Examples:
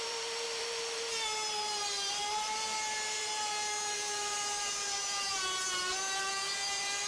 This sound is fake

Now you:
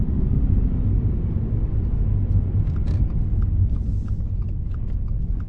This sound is real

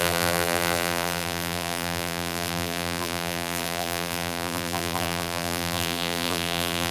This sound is fake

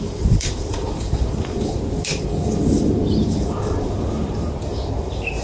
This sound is fake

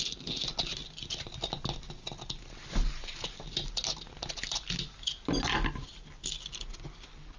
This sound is real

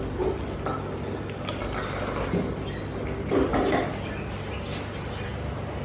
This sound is real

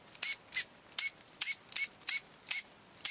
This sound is real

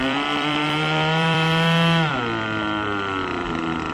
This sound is fake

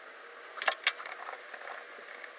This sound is real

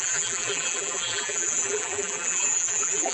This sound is fake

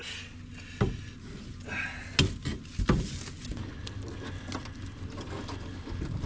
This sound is real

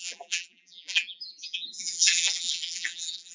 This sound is fake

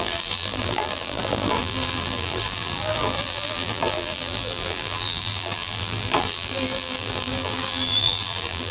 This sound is fake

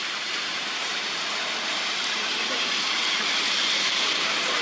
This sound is fake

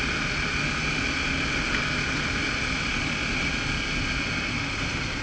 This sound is real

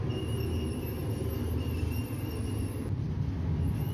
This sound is real